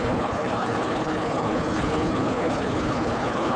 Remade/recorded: remade